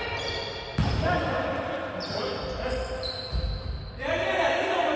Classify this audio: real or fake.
real